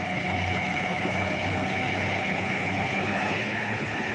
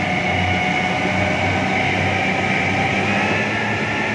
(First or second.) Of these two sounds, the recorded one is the second